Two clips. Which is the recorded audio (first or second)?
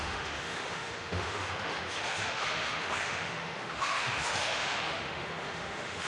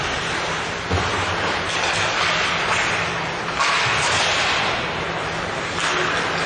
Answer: second